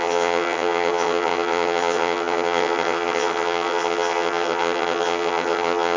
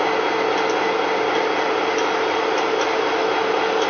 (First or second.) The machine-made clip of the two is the first